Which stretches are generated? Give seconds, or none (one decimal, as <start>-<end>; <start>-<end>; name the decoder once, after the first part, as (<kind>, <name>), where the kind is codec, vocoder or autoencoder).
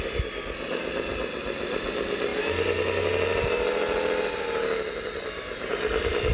none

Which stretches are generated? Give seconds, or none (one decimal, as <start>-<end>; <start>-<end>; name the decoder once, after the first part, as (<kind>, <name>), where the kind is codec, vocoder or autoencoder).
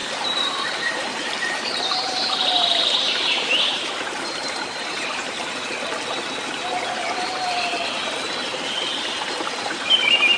0.0-5.2 (vocoder, BigVGAN v2); 8.8-10.4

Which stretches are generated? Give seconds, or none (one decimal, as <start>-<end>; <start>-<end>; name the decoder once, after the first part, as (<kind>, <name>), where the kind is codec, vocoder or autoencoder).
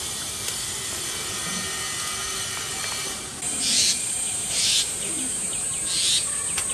2.7-3.4 (vocoder, BigVGAN v2); 4.4-5.1